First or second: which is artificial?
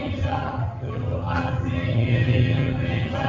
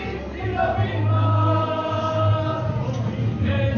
first